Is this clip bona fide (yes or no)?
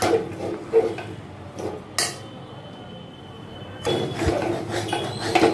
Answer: yes